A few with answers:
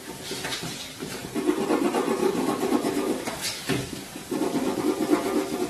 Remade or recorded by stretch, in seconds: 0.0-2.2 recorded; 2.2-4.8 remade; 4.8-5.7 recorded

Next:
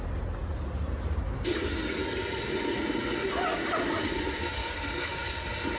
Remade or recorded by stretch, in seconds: 0.0-4.6 recorded; 4.6-5.2 remade; 5.2-5.8 recorded

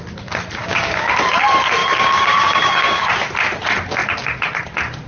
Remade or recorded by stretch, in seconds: 0.0-0.6 recorded; 0.6-1.1 remade; 1.1-1.8 recorded; 1.8-3.1 remade; 3.1-5.1 recorded

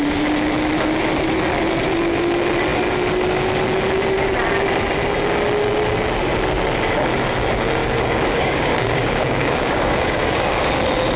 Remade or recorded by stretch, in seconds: 0.0-7.8 recorded; 7.8-10.7 remade; 10.7-11.2 recorded

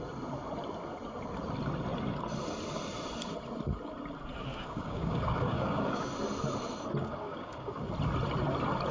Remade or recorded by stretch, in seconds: 0.0-4.5 recorded; 4.5-6.1 remade; 6.1-7.0 recorded; 7.0-7.9 remade; 7.9-8.9 recorded